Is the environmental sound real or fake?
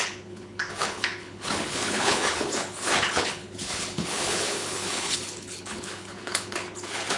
fake